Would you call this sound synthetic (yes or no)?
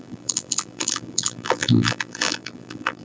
yes